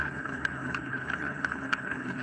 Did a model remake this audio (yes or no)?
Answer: yes